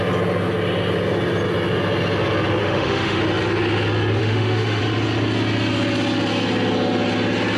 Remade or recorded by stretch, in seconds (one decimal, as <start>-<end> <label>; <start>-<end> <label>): 0.0-2.6 recorded; 2.6-3.2 remade; 3.2-4.2 recorded; 4.2-4.8 remade; 4.8-7.6 recorded